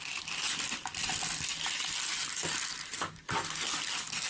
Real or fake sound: real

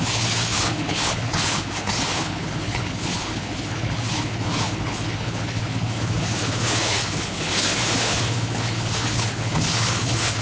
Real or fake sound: fake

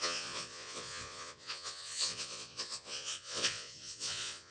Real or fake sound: fake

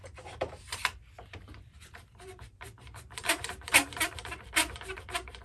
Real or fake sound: fake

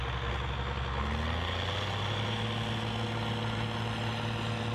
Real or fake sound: real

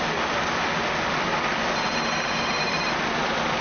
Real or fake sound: real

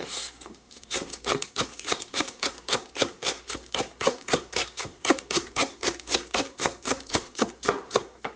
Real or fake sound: fake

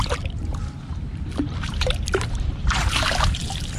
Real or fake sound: fake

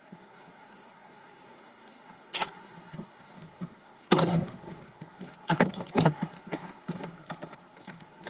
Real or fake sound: fake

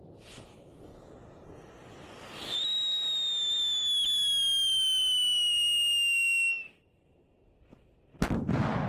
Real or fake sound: real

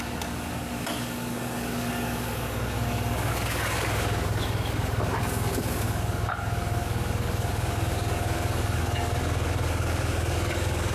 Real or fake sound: fake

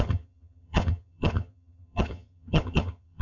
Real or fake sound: fake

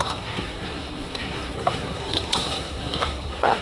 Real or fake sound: fake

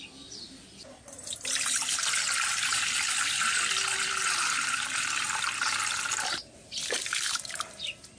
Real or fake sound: real